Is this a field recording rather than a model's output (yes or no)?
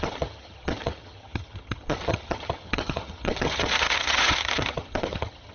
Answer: no